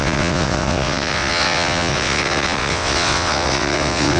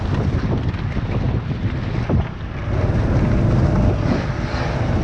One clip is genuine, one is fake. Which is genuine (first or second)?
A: second